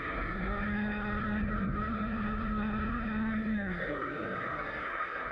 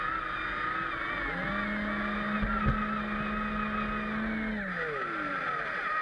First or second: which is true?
second